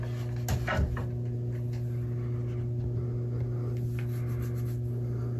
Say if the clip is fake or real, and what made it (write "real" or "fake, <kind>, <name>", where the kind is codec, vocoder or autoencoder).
real